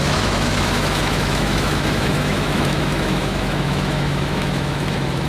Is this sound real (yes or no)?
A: no